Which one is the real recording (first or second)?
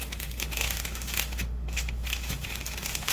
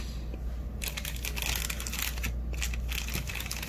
second